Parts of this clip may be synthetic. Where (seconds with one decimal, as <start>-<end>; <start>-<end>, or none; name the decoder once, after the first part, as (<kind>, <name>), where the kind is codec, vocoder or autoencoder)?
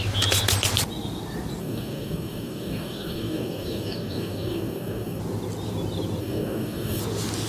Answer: 1.6-5.2 (codec, DAC); 6.2-7.0